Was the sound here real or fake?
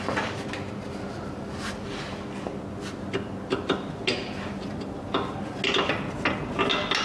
real